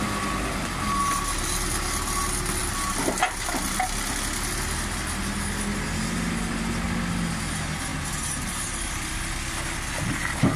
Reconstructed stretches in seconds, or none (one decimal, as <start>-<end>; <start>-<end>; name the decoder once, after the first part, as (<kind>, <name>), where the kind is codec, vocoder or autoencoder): none